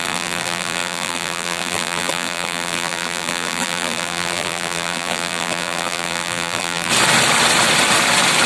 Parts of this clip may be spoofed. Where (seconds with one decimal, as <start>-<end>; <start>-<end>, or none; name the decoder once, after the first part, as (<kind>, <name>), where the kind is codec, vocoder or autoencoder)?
0.0-6.9 (vocoder, BigVGAN v2)